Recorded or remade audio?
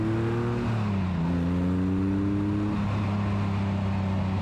recorded